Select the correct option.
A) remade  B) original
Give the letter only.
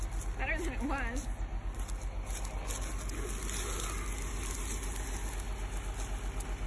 B